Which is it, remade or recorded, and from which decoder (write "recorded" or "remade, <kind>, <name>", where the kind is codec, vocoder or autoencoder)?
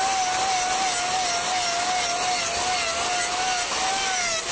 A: recorded